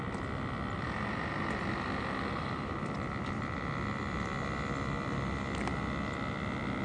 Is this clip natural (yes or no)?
yes